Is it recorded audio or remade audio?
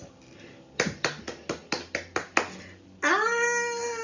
recorded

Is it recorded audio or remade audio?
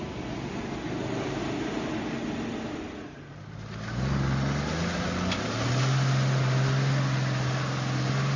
recorded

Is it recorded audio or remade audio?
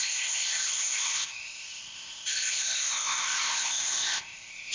remade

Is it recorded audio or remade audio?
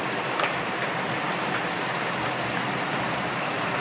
recorded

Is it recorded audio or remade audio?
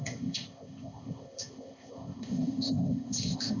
remade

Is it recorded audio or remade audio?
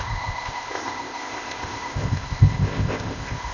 remade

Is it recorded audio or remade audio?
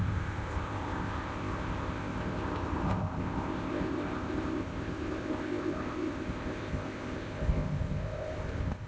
remade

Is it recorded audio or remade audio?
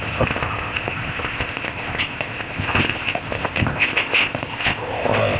remade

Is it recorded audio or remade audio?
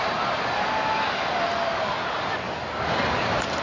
recorded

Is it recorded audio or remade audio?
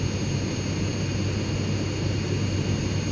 recorded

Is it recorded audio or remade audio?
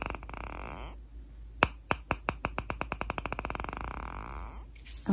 recorded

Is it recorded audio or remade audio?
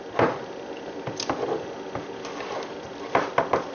recorded